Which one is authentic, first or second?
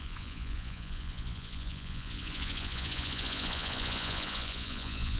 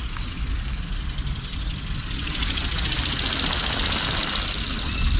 second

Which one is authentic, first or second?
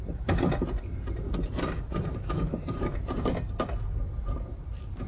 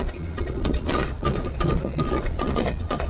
first